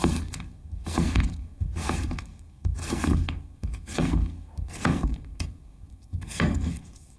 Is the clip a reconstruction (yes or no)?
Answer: yes